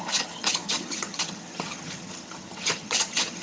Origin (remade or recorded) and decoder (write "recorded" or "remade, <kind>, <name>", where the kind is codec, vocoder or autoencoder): remade, vocoder, HiFi-GAN